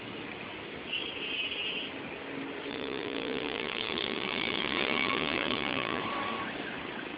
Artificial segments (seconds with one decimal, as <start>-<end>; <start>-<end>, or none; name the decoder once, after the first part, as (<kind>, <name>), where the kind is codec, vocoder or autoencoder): 2.7-6.0 (vocoder, Vocos)

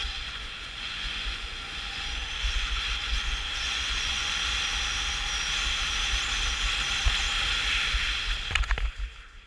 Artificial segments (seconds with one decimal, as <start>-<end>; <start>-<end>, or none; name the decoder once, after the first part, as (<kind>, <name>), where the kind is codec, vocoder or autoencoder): 0.0-4.4 (vocoder, Vocos)